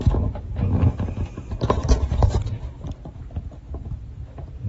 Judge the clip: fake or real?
real